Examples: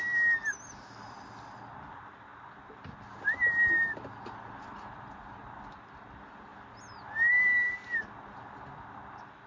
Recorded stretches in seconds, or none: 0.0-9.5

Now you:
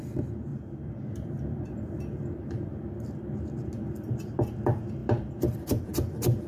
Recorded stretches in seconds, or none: 0.0-0.5; 2.4-5.0

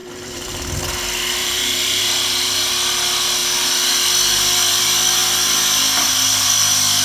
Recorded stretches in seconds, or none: 0.8-1.4; 2.7-7.0

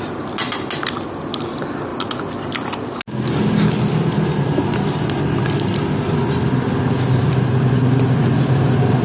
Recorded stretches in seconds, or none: 0.0-9.0

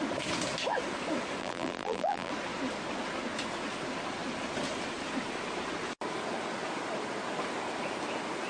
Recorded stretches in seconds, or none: 0.0-1.4; 2.3-8.5